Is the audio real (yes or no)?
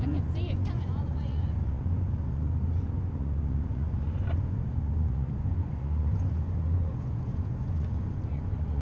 no